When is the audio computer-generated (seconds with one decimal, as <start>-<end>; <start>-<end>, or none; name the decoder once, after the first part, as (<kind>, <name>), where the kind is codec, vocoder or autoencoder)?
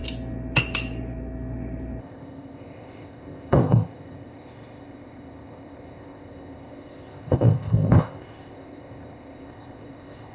2.0-10.3 (codec, ZipCodec)